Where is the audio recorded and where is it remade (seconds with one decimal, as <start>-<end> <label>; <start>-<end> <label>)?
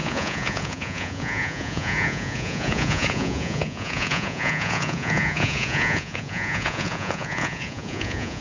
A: 0.0-8.4 remade